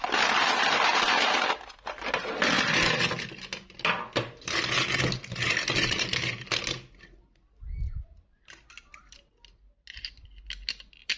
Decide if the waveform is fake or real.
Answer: real